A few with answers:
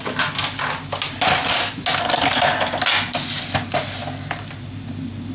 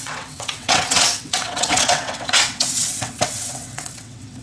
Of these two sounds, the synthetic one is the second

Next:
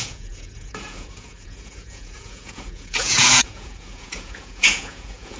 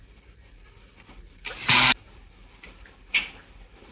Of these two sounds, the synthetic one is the first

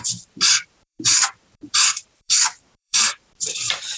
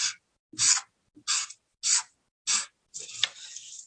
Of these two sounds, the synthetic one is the first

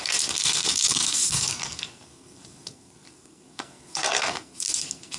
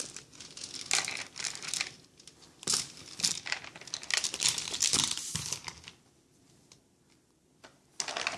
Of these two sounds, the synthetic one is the first